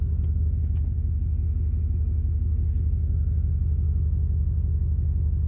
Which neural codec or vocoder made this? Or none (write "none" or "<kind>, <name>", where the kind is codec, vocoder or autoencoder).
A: none